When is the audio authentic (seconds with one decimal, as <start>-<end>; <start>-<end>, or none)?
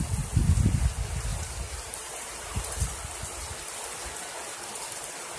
0.0-1.3; 2.8-5.4